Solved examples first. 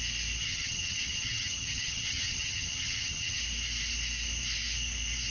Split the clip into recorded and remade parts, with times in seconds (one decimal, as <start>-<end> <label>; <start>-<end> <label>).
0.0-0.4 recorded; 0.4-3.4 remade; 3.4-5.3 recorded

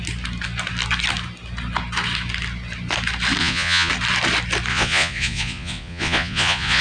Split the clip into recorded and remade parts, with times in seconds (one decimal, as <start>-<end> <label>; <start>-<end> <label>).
0.0-3.4 recorded; 3.4-3.9 remade; 3.9-4.7 recorded; 4.7-6.8 remade

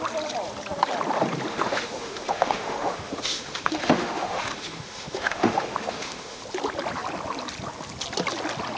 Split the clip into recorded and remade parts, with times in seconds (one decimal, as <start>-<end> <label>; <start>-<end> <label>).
0.0-1.5 recorded; 1.5-6.4 remade; 6.4-8.8 recorded

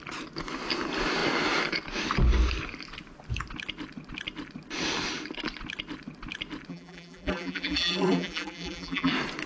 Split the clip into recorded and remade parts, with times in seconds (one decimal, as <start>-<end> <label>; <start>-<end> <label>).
0.0-6.7 recorded; 6.7-9.1 remade; 9.1-9.5 recorded

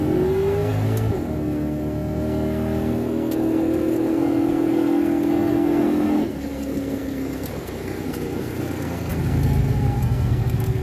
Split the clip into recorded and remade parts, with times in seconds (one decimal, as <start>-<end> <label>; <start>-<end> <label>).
0.0-10.8 remade

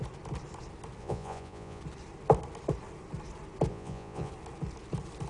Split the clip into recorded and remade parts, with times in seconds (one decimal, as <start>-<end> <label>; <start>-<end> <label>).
0.0-1.0 recorded; 1.0-1.8 remade; 1.8-3.7 recorded; 3.7-4.3 remade; 4.3-5.3 recorded

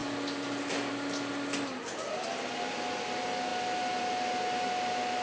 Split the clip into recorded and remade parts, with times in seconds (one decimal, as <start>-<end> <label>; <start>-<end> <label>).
0.0-5.2 recorded